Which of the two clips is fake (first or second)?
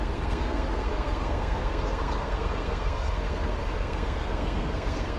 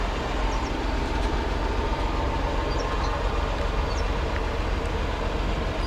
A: first